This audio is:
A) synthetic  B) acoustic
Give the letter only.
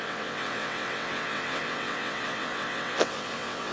A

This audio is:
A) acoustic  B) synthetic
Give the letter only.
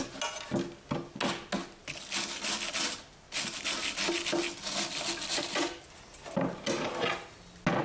A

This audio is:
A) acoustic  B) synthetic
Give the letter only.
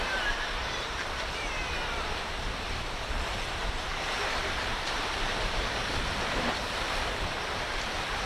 B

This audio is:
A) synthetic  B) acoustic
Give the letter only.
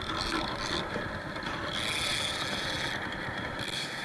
B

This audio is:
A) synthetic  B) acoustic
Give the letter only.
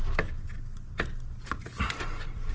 B